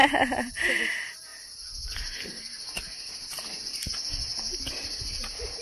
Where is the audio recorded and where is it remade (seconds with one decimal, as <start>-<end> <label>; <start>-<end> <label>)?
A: 0.0-0.7 remade; 0.7-5.6 recorded